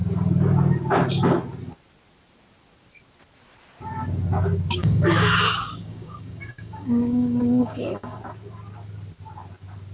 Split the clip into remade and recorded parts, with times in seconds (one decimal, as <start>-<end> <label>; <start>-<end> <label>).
0.0-4.8 recorded; 4.8-8.2 remade; 8.2-9.9 recorded